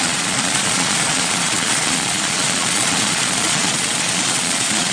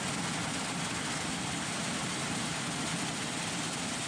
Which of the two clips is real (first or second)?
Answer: second